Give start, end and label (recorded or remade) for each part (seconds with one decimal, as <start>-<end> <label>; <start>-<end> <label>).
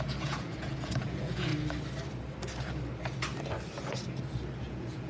0.0-1.5 remade; 1.5-4.6 recorded; 4.6-5.1 remade